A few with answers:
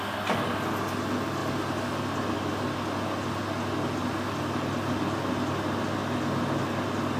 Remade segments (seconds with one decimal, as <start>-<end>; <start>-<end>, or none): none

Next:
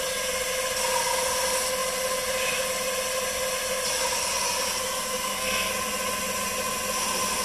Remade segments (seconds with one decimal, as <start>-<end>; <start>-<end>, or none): 5.2-5.7

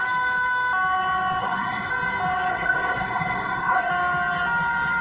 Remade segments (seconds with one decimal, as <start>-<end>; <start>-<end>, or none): 1.4-1.9; 2.5-3.9

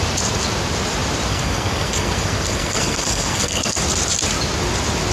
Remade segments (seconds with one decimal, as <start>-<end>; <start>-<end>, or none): 1.3-3.8

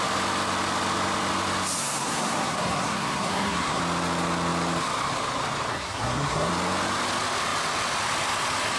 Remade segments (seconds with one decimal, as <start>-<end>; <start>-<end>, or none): 1.8-3.8; 5.7-6.5